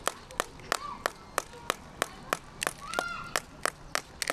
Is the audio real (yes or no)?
yes